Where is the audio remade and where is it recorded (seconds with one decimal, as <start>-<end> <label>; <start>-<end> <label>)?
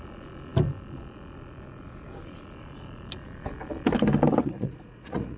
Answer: 0.0-4.4 recorded; 4.4-5.4 remade